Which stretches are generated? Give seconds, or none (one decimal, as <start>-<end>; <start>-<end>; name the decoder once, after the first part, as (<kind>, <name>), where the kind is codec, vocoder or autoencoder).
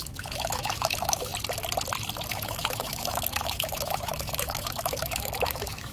0.0-1.3 (autoencoder, DAC-VAE); 2.3-5.9